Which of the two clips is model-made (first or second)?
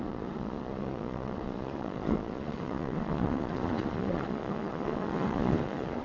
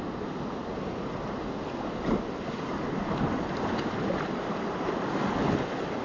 first